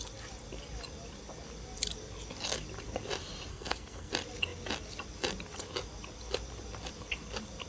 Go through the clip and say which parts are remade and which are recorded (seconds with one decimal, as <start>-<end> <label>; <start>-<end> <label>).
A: 0.0-3.5 recorded; 3.5-4.1 remade; 4.1-7.7 recorded